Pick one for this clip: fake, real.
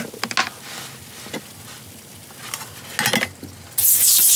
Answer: real